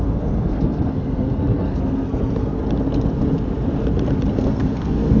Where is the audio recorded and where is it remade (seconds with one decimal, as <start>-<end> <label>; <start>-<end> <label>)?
0.0-2.6 remade; 2.6-4.3 recorded; 4.3-5.2 remade